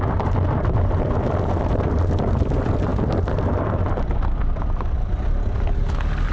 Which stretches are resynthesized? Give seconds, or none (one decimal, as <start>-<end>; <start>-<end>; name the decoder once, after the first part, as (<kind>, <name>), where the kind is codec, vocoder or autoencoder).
none